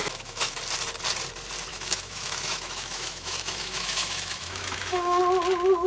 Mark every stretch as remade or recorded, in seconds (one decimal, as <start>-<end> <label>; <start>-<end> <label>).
0.0-0.6 remade; 0.6-1.7 recorded; 1.7-5.2 remade; 5.2-5.9 recorded